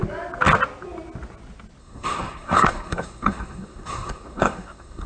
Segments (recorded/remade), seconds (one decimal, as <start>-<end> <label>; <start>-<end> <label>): 0.0-1.8 recorded; 1.8-5.1 remade